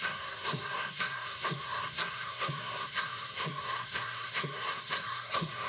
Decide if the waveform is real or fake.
fake